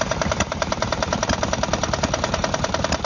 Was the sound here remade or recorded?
remade